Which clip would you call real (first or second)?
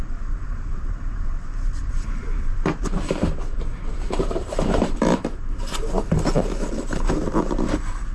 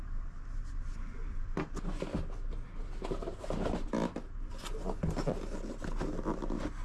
second